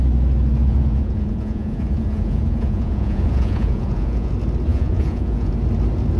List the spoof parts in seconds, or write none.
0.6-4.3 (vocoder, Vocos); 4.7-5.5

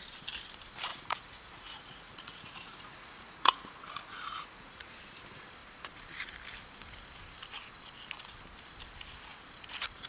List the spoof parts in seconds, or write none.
0.9-4.9 (vocoder, Vocos)

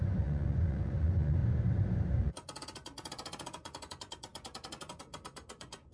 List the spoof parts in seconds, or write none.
0.0-1.4 (vocoder, Vocos); 2.2-5.9

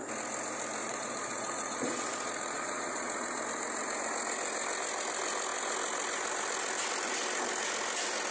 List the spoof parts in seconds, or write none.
0.8-3.4 (vocoder, Vocos)